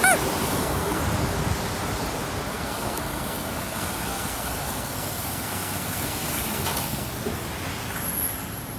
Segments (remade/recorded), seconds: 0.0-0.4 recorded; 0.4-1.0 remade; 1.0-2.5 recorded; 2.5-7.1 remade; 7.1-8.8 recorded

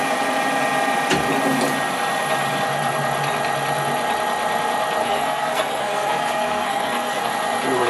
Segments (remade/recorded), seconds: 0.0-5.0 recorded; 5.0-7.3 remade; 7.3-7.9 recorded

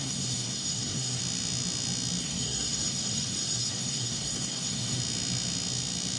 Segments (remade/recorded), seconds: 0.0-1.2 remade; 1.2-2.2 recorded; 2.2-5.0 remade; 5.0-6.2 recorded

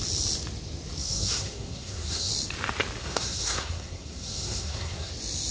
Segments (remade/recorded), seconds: 0.0-1.0 recorded; 1.0-2.3 remade; 2.3-3.0 recorded; 3.0-5.1 remade; 5.1-5.5 recorded

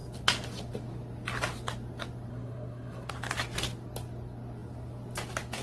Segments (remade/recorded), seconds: 0.0-2.3 recorded; 2.3-3.1 remade; 3.1-5.6 recorded